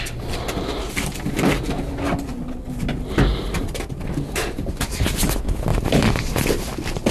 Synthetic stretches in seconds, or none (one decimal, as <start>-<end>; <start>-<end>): 3.3-3.9; 5.7-7.1